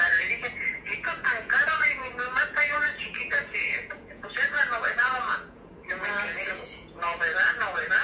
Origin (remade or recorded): remade